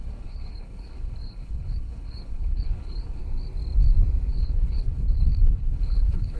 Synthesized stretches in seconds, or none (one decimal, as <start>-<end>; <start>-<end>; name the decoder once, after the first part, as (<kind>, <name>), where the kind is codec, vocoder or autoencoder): 0.0-3.2 (codec, HILCodec); 4.3-6.4